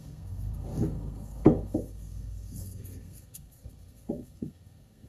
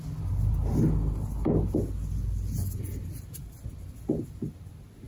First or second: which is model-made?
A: first